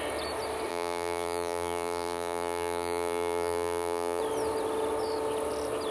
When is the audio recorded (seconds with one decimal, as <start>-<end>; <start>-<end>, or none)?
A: 0.0-0.7; 4.2-5.9